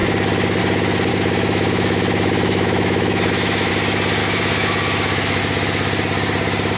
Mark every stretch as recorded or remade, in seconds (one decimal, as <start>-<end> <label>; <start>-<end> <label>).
0.0-1.1 recorded; 1.1-3.7 remade; 3.7-4.2 recorded; 4.2-5.4 remade; 5.4-6.8 recorded